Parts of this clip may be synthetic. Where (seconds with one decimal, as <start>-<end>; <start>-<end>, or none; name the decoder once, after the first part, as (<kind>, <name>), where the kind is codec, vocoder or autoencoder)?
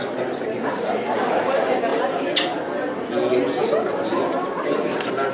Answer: none